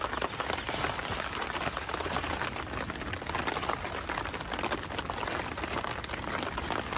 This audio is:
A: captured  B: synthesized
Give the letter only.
A